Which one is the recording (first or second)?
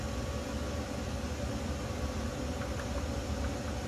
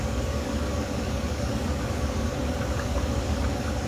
first